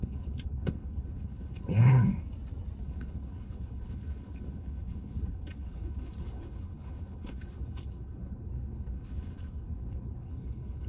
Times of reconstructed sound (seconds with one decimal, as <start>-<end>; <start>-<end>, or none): 0.0-2.1; 2.8-10.9